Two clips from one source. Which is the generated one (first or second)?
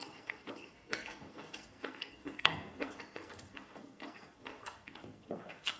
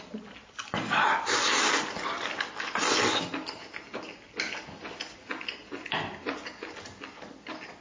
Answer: first